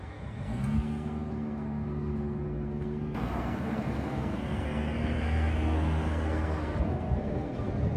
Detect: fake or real fake